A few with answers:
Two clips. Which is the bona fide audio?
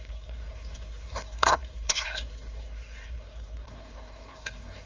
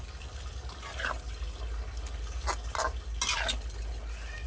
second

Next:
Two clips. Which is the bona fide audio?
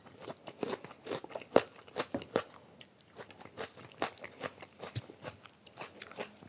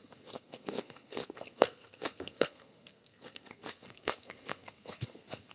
first